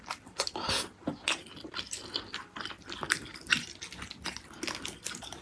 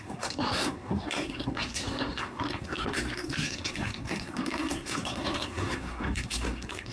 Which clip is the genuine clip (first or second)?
first